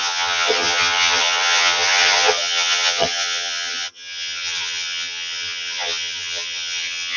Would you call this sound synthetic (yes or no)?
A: yes